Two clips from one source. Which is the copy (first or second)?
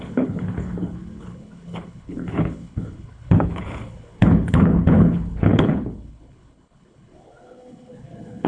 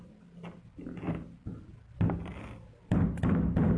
first